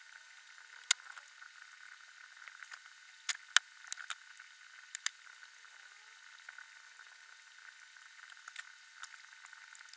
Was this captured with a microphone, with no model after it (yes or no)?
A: yes